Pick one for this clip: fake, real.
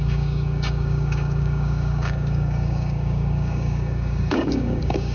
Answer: fake